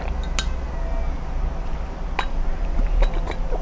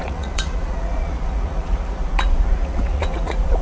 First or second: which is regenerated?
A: second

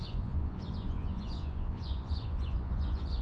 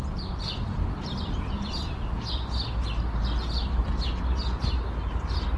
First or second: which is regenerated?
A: first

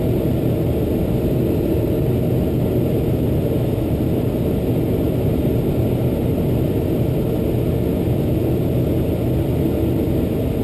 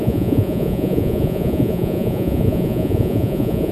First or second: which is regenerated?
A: second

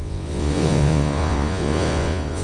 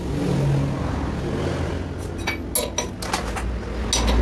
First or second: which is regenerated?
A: first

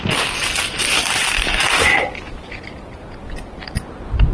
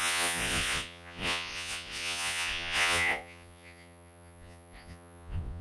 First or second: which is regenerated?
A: second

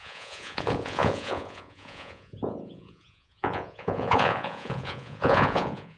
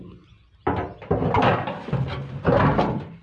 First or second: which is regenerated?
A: first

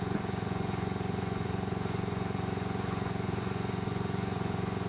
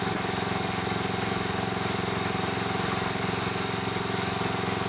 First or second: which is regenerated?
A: first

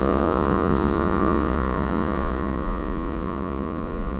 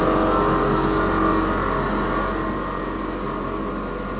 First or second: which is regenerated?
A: first